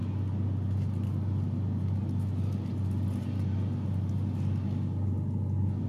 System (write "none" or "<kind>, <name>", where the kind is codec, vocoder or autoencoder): none